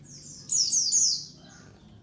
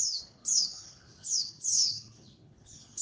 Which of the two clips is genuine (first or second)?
first